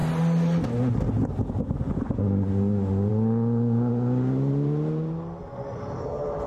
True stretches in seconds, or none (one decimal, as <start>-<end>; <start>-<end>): 0.0-6.5